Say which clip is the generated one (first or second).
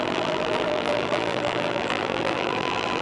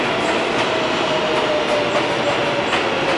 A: first